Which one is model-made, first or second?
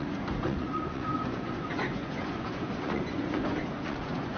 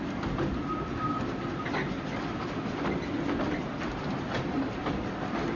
first